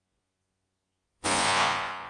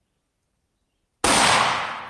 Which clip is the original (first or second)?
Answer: second